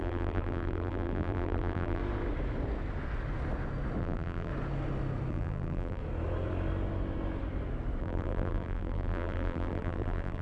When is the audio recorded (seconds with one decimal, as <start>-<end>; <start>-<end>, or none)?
2.0-4.0; 4.5-5.3; 6.0-8.0